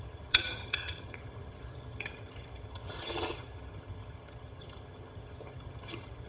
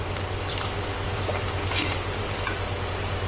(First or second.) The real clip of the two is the second